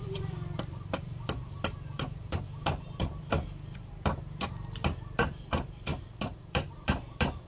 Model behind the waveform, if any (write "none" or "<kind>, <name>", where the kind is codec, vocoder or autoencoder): vocoder, BigVGAN v2